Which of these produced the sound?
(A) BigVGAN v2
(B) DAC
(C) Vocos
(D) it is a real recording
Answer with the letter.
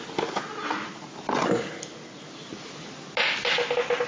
D